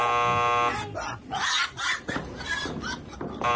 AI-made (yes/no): no